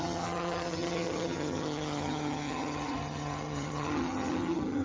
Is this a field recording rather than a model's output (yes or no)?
no